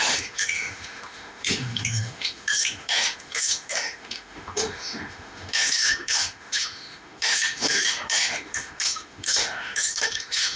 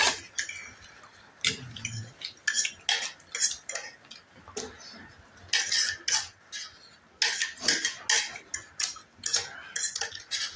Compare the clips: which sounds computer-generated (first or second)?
first